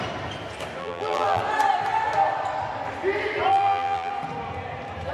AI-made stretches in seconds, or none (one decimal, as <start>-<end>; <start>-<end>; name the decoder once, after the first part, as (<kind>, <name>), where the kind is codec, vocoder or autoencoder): 0.8-1.4 (vocoder, BigVGAN v2); 3.5-4.1